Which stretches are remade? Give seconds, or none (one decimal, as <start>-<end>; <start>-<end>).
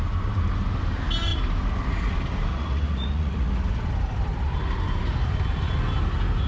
2.5-3.5